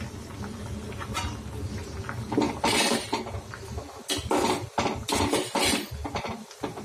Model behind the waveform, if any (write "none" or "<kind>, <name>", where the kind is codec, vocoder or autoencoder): none